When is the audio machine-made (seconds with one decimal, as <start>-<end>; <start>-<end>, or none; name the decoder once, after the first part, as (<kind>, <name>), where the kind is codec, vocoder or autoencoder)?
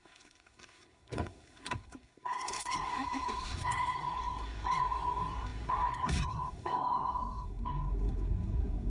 0.0-8.9 (codec, SNAC)